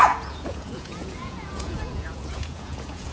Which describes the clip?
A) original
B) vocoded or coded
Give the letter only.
B